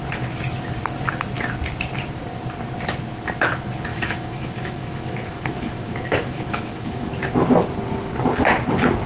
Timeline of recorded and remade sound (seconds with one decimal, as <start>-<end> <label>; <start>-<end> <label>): 0.0-3.9 recorded; 3.9-7.1 remade; 7.1-9.1 recorded